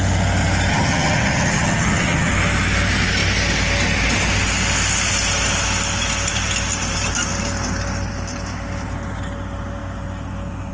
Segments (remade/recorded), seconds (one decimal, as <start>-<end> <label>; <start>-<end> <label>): 0.0-0.7 recorded; 0.7-2.3 remade; 2.3-10.7 recorded